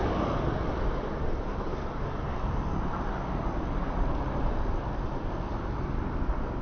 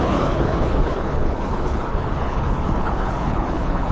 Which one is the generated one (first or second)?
second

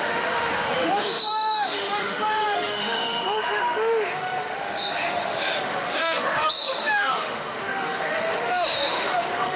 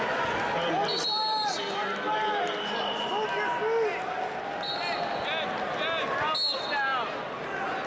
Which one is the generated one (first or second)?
first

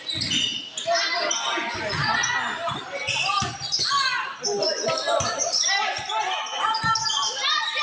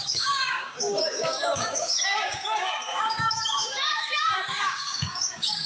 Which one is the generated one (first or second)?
second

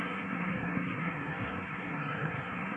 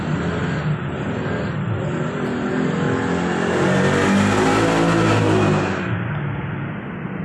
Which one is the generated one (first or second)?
first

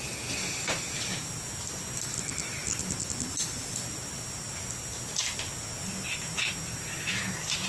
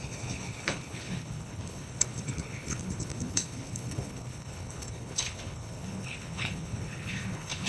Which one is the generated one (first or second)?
second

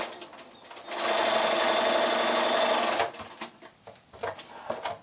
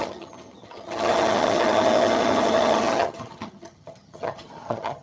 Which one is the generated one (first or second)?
second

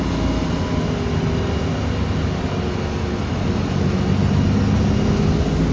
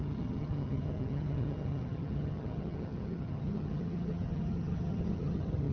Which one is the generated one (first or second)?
second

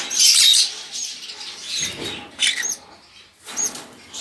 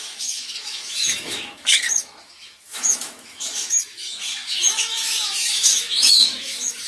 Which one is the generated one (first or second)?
second